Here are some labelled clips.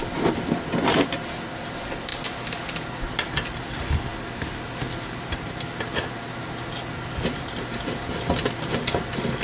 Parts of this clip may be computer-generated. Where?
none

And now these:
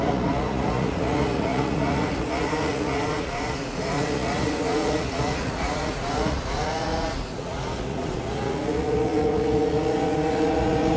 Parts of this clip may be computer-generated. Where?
0.0-11.0 (vocoder, Vocos)

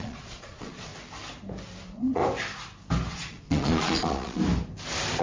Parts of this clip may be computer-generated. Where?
0.0-0.9 (vocoder, Vocos); 1.8-2.2; 3.1-4.4

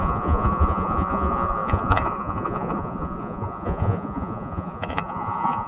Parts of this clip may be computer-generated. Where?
0.0-5.7 (vocoder, Vocos)

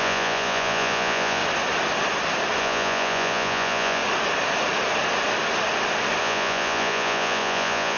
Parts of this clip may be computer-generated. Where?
0.0-1.4 (vocoder, Vocos); 2.6-4.0; 6.2-8.0

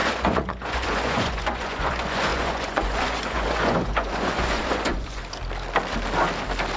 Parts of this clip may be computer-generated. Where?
0.0-5.2 (vocoder, Vocos)